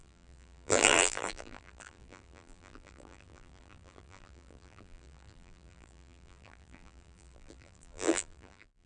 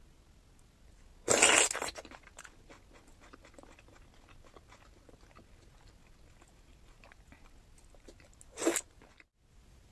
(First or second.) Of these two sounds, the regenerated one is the first